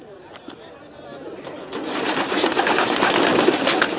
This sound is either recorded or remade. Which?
recorded